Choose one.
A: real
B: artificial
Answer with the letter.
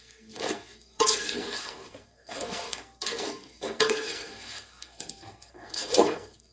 B